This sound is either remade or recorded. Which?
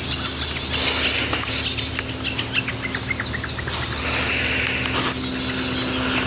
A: recorded